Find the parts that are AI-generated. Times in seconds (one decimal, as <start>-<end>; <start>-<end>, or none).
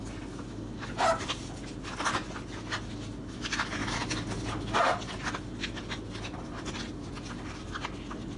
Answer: none